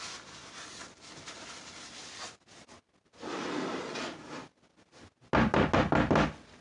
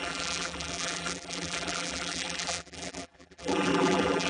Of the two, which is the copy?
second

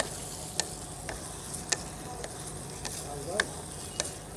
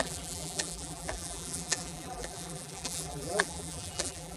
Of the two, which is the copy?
second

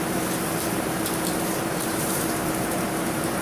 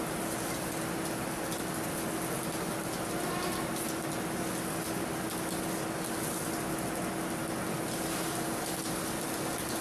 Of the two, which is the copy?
first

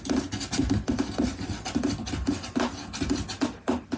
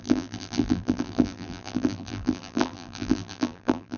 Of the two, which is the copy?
second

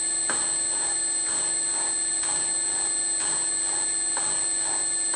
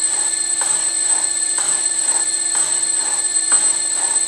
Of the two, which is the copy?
second